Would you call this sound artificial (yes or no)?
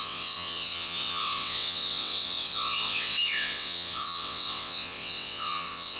yes